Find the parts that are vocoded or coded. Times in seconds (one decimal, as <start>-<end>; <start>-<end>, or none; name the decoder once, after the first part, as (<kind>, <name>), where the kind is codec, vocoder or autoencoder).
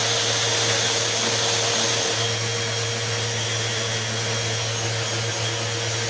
none